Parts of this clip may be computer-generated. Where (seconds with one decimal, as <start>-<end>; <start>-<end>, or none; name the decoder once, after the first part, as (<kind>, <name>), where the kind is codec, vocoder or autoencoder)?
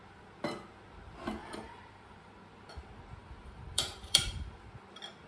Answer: 1.4-2.3 (vocoder, BigVGAN v2); 3.2-4.6